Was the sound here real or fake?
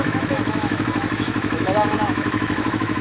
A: fake